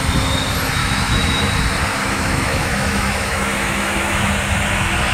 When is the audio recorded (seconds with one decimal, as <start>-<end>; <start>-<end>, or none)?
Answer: 0.0-0.8; 1.5-1.9; 4.3-5.1